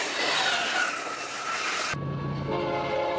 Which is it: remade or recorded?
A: recorded